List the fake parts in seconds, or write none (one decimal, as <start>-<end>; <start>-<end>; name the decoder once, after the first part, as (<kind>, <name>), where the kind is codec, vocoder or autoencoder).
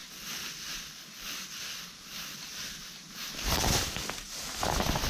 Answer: 2.5-3.8 (vocoder, BigVGAN v2)